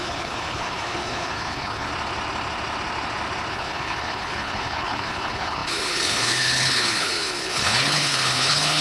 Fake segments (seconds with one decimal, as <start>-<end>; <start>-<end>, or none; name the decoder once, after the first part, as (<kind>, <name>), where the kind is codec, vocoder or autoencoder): 0.0-1.9 (codec, HILCodec); 3.5-8.8